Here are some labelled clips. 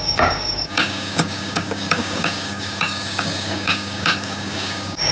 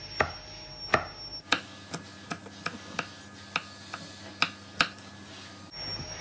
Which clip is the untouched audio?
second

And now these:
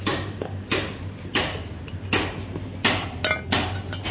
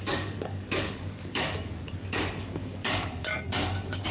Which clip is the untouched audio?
first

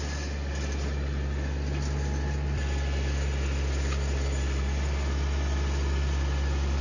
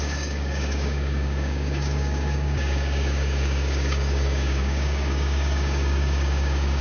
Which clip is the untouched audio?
first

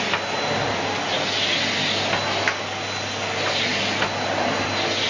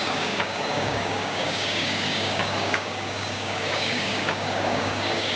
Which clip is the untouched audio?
first